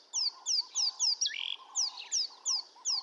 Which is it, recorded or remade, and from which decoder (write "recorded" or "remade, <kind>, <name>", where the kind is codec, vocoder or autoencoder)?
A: recorded